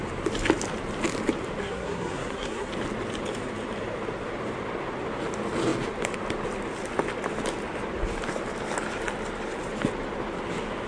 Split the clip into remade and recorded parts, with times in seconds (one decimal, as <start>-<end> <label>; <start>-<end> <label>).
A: 0.0-1.6 recorded; 1.6-2.7 remade; 2.7-10.9 recorded